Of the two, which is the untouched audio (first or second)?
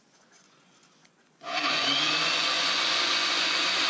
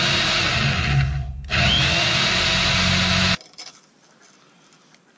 second